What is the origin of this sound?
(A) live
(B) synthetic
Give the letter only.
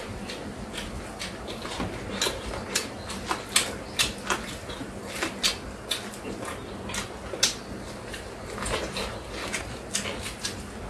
A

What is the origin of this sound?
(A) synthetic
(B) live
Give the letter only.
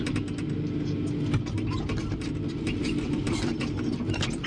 B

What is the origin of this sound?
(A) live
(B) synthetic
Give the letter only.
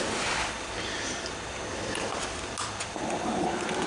A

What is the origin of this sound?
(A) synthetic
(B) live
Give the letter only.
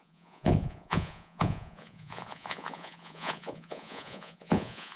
A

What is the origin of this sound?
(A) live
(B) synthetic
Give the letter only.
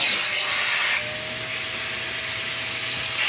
A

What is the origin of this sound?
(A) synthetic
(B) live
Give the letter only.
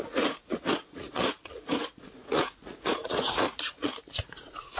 A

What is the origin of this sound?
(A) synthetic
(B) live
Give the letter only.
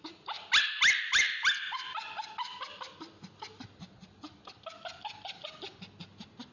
B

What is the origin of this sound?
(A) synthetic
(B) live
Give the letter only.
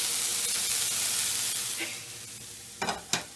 B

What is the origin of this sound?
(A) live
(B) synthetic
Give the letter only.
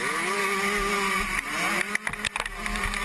A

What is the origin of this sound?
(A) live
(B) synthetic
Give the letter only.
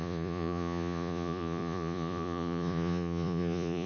B